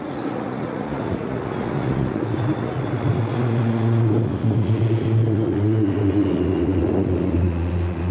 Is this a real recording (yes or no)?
no